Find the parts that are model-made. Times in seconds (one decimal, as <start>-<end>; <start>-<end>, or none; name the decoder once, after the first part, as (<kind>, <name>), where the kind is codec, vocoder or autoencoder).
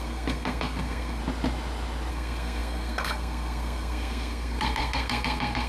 0.0-1.2 (codec, SNAC); 2.1-5.7